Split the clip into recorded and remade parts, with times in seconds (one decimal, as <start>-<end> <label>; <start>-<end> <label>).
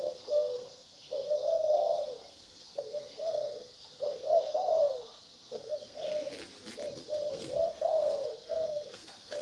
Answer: 0.0-6.3 remade; 6.3-7.3 recorded; 7.3-9.4 remade